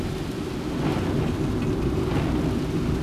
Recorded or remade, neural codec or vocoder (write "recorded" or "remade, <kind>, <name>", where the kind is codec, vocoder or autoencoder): recorded